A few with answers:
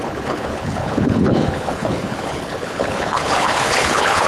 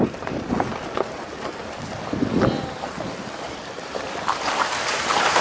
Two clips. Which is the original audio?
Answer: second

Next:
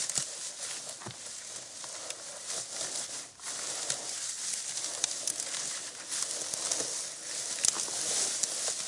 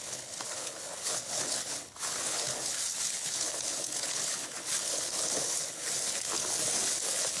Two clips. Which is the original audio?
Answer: first